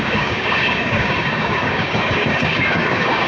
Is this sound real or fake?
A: fake